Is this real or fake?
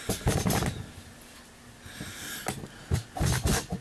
real